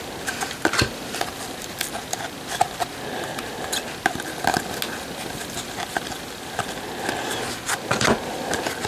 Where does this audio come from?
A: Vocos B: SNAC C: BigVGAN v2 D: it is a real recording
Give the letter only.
D